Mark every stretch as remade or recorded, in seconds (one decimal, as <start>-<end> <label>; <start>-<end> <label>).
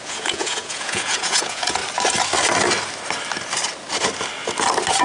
0.0-1.8 remade; 1.8-5.0 recorded